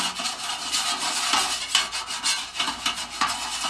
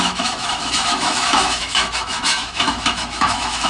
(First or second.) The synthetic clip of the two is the second